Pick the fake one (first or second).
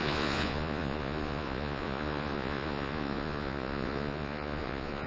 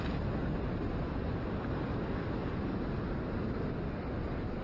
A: first